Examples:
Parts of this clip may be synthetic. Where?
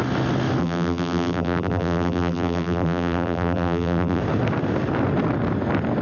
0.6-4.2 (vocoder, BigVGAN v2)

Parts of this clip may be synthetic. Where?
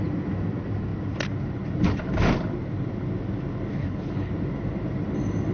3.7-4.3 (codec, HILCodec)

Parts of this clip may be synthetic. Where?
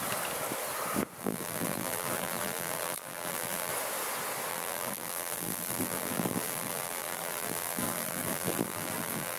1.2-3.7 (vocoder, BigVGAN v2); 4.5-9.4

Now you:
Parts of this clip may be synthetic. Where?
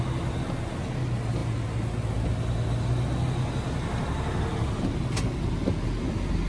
none